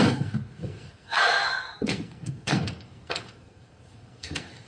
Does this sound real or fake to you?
fake